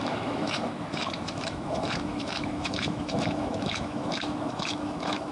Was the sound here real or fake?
fake